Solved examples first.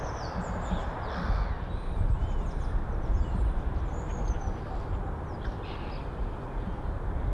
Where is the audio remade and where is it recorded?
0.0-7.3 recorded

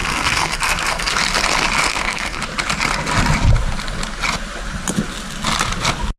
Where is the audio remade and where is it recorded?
0.0-1.2 remade; 1.2-1.8 recorded; 1.8-2.4 remade; 2.4-6.2 recorded